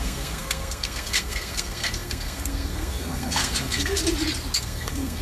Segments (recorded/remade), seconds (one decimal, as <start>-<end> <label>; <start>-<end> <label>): 0.0-4.0 remade; 4.0-4.6 recorded; 4.6-5.2 remade